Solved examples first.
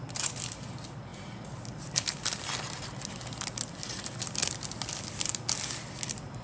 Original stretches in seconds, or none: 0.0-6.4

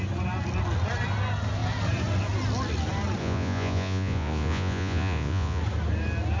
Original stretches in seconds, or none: 0.0-3.2; 5.6-6.4

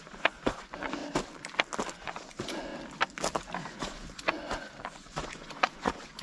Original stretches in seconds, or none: 1.0-1.9; 2.7-3.7

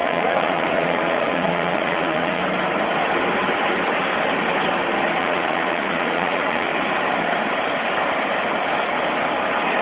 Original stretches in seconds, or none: 2.4-5.2; 6.7-9.8

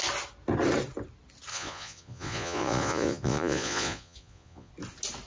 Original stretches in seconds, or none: 0.0-1.5; 4.7-5.3

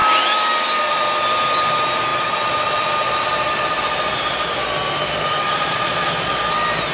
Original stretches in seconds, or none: 0.0-5.5; 6.4-6.9

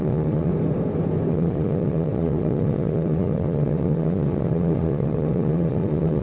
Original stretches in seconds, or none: 0.5-1.3